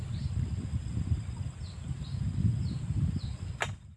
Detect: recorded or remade recorded